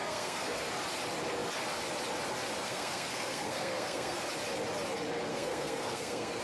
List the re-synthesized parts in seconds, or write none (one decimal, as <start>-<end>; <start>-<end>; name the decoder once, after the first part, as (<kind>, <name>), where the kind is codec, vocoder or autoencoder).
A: 0.0-0.7 (codec, SNAC); 2.6-4.2; 5.3-6.4